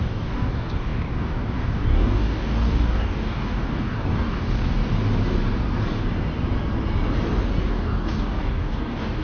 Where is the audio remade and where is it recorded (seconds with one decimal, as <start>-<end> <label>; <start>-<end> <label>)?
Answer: 0.0-4.8 remade; 4.8-7.6 recorded; 7.6-9.2 remade